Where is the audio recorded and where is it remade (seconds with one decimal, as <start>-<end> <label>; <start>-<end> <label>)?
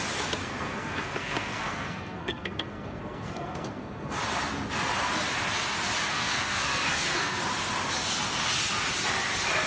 0.0-0.4 recorded; 0.4-4.2 remade; 4.2-6.1 recorded; 6.1-7.4 remade; 7.4-9.7 recorded